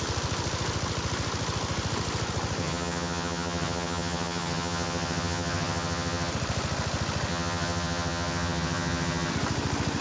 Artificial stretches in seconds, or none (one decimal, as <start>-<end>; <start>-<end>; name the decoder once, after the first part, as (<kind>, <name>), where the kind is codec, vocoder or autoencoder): 2.6-6.3 (vocoder, HiFi-GAN); 7.3-9.3